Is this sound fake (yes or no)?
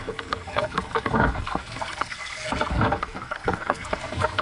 yes